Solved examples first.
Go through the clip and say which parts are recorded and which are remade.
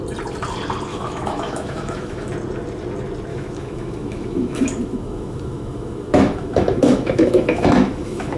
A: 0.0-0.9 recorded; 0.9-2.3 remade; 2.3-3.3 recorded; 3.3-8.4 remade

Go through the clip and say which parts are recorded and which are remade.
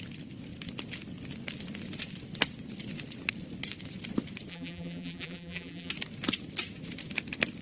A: 0.0-4.5 recorded; 4.5-5.9 remade; 5.9-7.6 recorded